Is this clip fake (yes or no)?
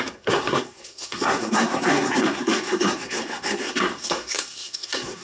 yes